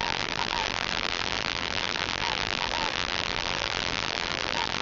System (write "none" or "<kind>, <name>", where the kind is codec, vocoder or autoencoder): vocoder, BigVGAN v2